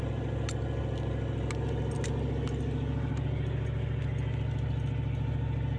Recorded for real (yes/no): yes